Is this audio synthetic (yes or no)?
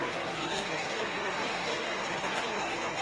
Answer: yes